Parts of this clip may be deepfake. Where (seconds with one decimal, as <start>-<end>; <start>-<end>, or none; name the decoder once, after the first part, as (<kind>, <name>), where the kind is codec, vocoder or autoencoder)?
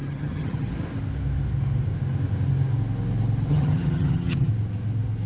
0.0-0.7 (vocoder, HiFi-GAN); 3.5-4.5